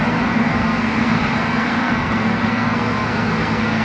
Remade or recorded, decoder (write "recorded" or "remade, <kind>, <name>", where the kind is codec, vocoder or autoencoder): remade, codec, SNAC